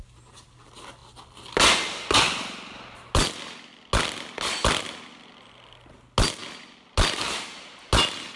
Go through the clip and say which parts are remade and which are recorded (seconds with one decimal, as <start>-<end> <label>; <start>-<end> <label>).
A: 0.0-8.4 recorded